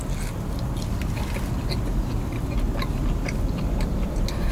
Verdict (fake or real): real